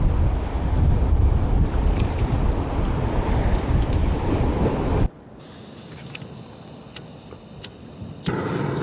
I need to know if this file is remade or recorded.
recorded